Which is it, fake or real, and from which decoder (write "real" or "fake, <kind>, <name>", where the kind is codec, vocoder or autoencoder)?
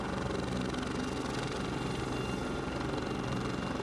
real